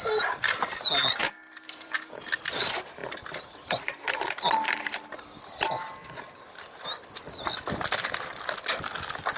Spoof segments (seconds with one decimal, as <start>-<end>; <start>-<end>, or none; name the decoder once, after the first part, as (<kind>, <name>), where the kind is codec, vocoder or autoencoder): 1.2-2.1 (vocoder, BigVGAN v2); 3.0-4.3